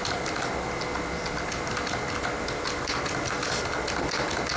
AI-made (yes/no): no